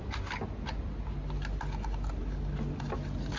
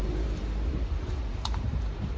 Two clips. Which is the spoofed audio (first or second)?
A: second